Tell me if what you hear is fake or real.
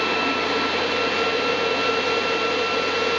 real